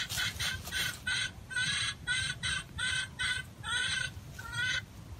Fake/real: real